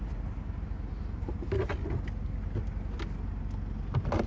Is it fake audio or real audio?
real